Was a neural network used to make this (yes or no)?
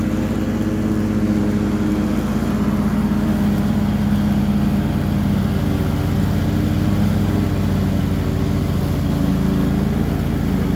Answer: no